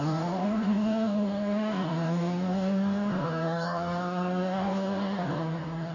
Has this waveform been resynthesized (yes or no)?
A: yes